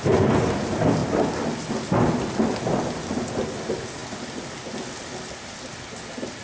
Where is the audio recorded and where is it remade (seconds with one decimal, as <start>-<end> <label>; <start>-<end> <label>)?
0.0-6.4 recorded